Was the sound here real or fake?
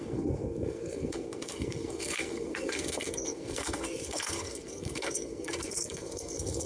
fake